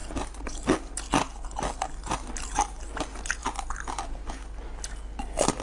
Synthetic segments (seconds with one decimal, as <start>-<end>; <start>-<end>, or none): none